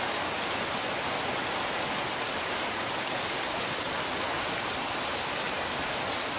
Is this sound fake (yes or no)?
no